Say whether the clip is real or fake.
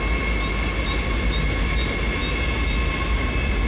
real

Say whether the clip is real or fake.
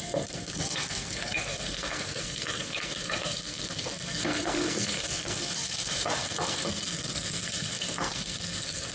fake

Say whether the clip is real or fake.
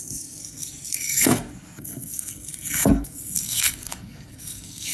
fake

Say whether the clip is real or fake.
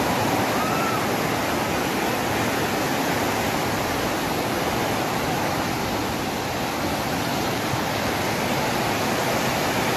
real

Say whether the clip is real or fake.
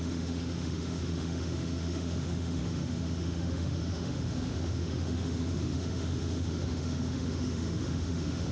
fake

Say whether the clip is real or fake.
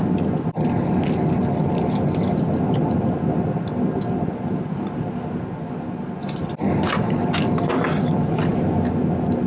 real